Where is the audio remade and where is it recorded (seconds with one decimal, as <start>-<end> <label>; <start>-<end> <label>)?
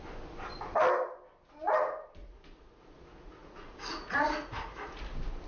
0.0-2.2 recorded; 2.2-5.0 remade; 5.0-5.5 recorded